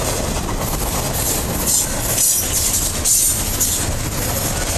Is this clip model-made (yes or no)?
no